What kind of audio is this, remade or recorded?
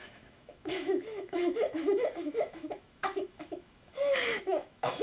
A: remade